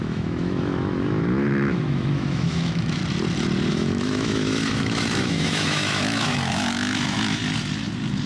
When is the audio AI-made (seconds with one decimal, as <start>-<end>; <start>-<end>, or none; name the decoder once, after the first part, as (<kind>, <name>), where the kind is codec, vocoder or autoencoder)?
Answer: 0.0-3.0 (autoencoder, DAC-VAE); 3.7-7.4

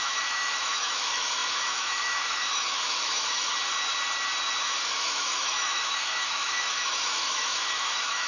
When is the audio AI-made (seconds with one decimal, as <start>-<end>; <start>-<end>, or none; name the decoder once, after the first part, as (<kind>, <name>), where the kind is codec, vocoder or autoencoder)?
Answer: 0.0-3.5 (autoencoder, DAC-VAE); 4.9-8.3

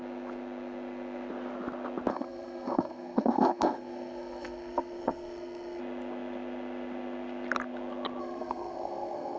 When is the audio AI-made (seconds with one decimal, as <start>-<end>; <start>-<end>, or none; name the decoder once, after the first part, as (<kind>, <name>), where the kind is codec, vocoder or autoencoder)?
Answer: 2.1-5.8 (codec, SNAC); 8.2-9.4

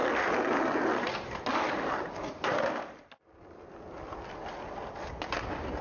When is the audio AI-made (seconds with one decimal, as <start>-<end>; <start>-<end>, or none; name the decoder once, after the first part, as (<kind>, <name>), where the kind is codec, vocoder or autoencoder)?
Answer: none